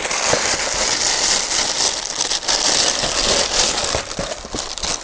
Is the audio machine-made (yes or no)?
no